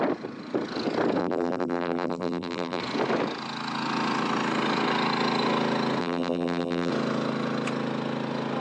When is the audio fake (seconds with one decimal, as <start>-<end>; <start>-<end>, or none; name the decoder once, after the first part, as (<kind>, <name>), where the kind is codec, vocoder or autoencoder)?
1.2-2.8 (vocoder, BigVGAN v2); 6.0-6.9